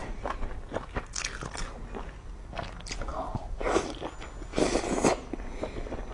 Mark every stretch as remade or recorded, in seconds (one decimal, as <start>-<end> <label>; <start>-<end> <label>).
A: 0.0-1.1 remade; 1.1-3.1 recorded; 3.1-4.0 remade; 4.0-6.1 recorded